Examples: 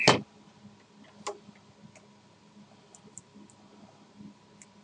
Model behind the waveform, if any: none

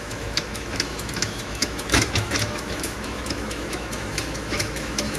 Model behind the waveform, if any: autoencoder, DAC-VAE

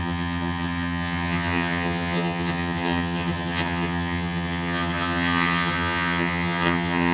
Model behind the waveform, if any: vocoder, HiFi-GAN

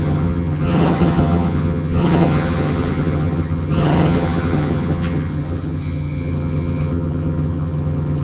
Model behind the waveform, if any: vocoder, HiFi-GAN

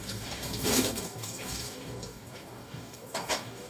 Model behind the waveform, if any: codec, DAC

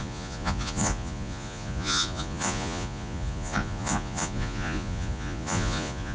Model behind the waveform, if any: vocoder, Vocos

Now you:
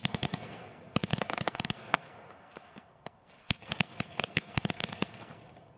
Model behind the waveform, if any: codec, SNAC